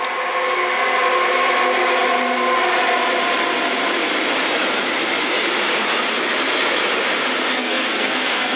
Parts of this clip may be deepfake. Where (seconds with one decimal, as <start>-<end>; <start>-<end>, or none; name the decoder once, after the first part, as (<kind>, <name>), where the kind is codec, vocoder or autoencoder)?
7.5-8.6 (codec, SNAC)